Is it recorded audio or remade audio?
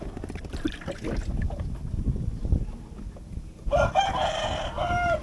recorded